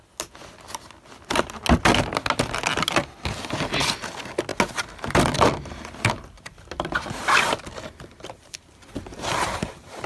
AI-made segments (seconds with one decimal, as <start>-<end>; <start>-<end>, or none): none